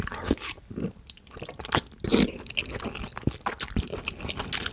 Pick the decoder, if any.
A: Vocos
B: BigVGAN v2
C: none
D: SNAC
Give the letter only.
C